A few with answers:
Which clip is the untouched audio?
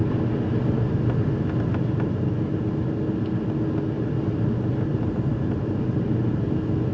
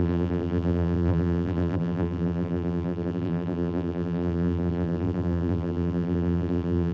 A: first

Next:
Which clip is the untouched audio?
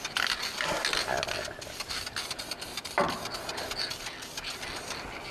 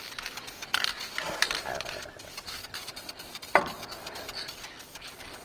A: first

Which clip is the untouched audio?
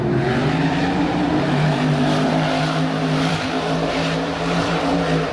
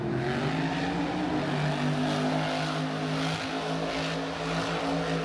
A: second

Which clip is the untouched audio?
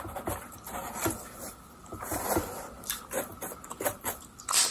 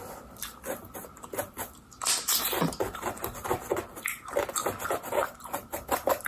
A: second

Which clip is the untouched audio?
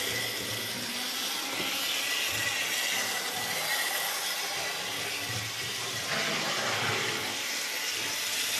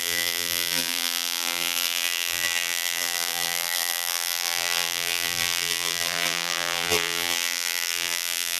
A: first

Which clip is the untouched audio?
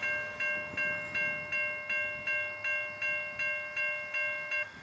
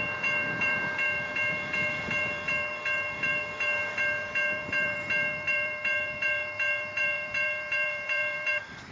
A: first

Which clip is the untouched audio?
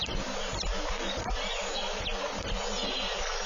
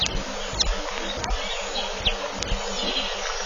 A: second